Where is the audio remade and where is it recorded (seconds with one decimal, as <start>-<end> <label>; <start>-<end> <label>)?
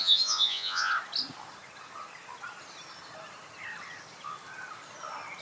0.0-0.9 remade; 0.9-5.4 recorded